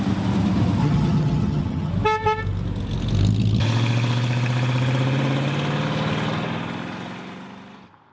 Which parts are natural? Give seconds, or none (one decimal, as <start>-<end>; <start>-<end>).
0.0-0.8; 1.9-8.1